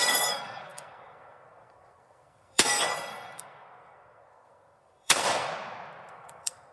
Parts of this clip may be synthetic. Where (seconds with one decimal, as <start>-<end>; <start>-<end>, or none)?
0.0-5.5; 6.1-6.7